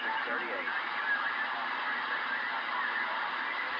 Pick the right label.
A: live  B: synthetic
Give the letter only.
A